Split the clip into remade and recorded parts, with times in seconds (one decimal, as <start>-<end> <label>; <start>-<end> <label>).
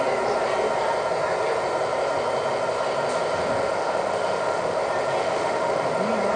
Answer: 0.0-3.6 recorded; 3.6-4.8 remade; 4.8-5.2 recorded; 5.2-5.9 remade; 5.9-6.4 recorded